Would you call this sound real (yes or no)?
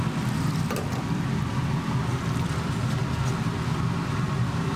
no